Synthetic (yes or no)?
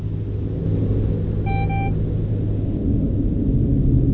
no